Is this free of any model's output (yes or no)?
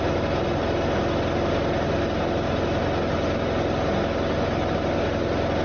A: yes